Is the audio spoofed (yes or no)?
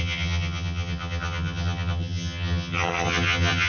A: yes